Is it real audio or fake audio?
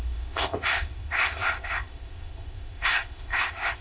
fake